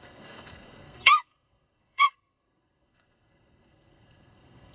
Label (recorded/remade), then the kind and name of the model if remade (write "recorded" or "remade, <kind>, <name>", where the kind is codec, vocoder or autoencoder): remade, codec, SNAC